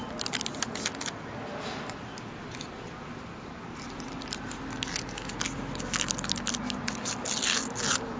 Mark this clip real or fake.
real